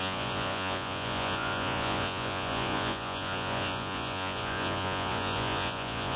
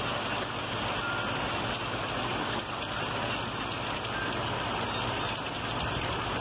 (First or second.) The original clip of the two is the second